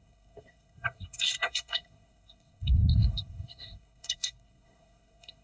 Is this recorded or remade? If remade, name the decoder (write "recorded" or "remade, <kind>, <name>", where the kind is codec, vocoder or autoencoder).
remade, codec, SNAC